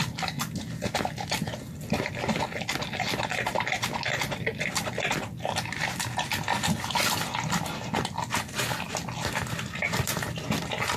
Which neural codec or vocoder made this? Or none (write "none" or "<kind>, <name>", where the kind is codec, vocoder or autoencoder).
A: none